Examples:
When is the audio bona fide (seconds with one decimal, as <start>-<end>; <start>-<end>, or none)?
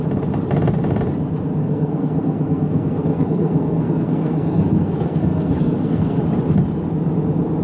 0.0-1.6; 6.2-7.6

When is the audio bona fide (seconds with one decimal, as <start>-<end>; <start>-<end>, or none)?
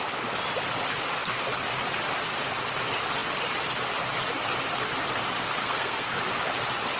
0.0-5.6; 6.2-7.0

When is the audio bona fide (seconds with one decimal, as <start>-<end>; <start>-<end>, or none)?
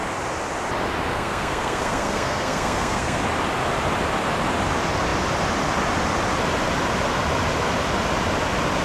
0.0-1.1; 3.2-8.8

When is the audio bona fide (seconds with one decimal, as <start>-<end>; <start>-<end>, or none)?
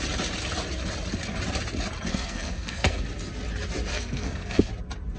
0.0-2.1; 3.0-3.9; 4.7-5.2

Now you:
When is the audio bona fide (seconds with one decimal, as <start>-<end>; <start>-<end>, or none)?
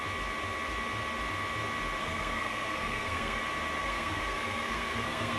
0.0-2.0; 3.4-3.8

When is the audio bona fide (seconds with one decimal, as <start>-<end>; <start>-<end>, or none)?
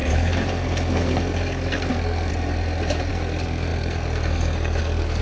2.3-3.1